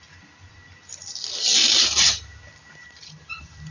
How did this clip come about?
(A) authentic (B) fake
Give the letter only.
B